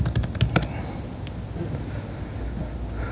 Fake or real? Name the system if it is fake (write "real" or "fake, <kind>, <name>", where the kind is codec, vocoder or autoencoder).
real